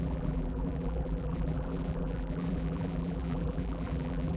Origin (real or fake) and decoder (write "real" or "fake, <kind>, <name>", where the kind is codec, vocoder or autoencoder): fake, vocoder, BigVGAN v2